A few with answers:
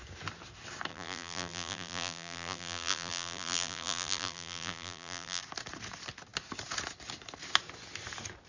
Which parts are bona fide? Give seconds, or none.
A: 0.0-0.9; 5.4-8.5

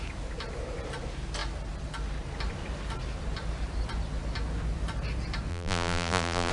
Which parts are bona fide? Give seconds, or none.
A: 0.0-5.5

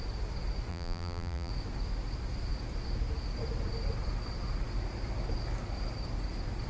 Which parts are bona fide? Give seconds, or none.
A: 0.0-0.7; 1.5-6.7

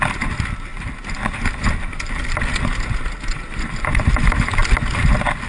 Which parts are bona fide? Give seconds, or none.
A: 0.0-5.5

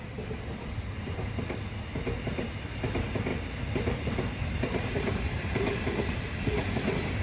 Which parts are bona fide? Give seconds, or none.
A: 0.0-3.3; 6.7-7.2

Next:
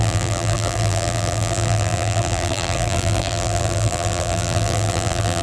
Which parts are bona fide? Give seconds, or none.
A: none

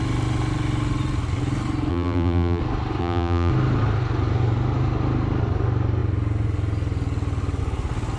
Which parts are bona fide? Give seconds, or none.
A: 0.0-1.9; 2.6-3.0; 3.5-8.2